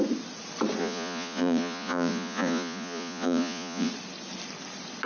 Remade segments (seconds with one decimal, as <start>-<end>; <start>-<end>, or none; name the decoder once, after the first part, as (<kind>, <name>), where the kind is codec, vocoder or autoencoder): 0.8-3.9 (vocoder, Vocos)